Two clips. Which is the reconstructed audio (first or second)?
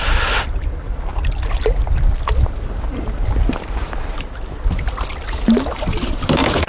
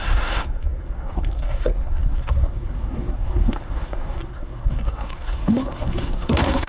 second